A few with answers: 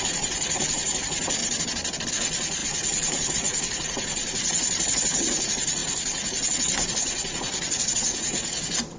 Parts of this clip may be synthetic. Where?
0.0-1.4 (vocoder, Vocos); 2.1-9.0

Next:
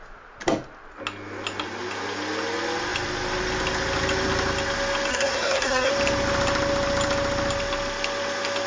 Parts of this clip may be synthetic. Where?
5.1-5.9 (codec, SNAC)

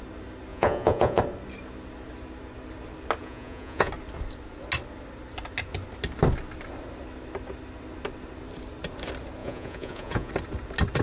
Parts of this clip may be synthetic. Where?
0.5-1.2 (vocoder, Vocos); 3.2-3.9; 9.4-10.3

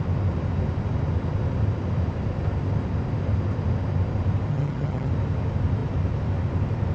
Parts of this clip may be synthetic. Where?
4.5-5.1 (vocoder, HiFi-GAN)

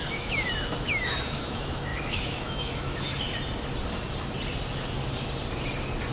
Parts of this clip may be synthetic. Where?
0.0-3.1 (autoencoder, DAC-VAE)